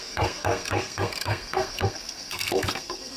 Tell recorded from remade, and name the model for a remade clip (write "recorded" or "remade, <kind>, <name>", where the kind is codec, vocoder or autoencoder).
remade, codec, SNAC